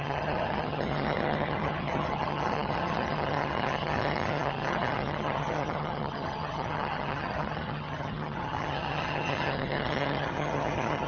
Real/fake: fake